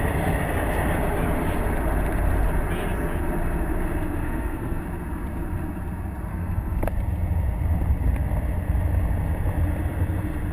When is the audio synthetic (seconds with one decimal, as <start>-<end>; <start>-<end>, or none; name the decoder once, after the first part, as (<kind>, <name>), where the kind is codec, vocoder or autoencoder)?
4.2-4.8 (codec, SNAC); 6.3-6.8